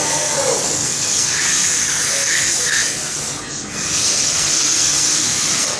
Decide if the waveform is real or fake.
fake